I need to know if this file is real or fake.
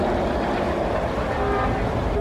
real